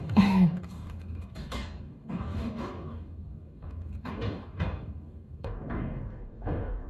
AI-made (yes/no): yes